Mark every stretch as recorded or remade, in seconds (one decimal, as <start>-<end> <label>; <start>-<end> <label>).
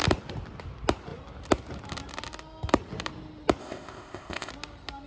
0.0-3.6 recorded; 3.6-4.5 remade; 4.5-5.1 recorded